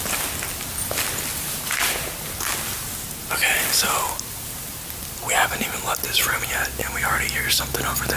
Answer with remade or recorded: recorded